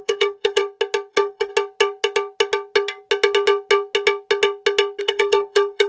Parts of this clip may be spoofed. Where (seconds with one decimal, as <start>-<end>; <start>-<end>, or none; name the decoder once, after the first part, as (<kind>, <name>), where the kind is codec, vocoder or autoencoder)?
0.0-0.6 (codec, SNAC); 1.1-1.5; 5.0-5.9